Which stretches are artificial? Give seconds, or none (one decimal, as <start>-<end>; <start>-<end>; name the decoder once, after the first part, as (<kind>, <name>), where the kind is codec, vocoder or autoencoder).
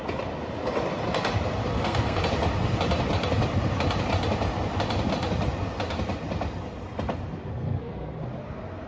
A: 1.7-2.2 (codec, SNAC); 7.5-8.2